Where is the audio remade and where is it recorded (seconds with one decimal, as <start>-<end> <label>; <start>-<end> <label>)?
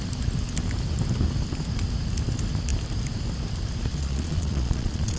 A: 0.0-3.9 recorded; 3.9-5.2 remade